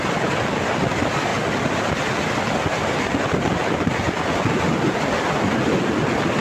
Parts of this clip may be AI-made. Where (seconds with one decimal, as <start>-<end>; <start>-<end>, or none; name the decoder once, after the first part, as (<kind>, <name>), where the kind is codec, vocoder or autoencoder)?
none